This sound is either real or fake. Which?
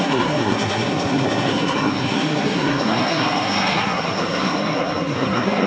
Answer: fake